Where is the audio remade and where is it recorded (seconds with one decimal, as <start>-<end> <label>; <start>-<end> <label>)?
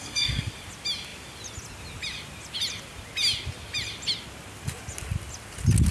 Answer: 0.0-0.5 remade; 0.5-5.9 recorded